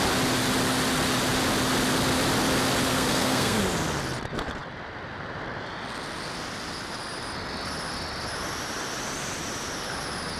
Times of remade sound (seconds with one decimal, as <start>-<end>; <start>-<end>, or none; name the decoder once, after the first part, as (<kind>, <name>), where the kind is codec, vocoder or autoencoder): 2.9-3.6 (codec, SNAC)